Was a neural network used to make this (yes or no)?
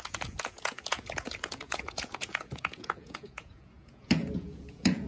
yes